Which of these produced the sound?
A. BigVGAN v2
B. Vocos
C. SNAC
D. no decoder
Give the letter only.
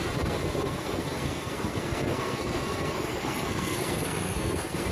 C